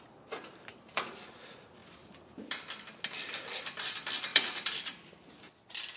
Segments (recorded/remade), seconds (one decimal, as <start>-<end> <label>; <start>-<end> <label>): 0.0-0.7 recorded; 0.7-1.3 remade; 1.3-4.3 recorded; 4.3-5.0 remade; 5.0-6.0 recorded